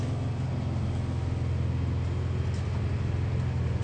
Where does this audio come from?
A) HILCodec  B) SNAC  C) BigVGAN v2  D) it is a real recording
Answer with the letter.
D